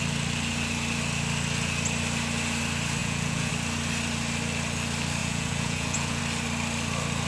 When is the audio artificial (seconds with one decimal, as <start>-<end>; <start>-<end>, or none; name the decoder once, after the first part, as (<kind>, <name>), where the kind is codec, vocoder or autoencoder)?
3.0-3.5 (vocoder, Vocos); 5.2-6.2